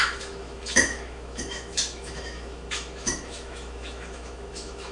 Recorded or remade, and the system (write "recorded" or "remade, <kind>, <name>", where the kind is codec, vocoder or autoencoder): remade, autoencoder, DAC-VAE